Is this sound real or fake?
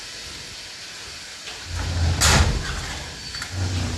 real